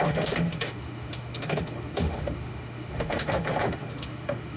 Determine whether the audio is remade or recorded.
remade